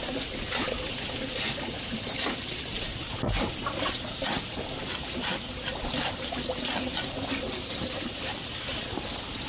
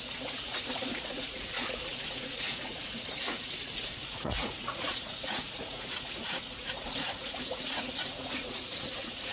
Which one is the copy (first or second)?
second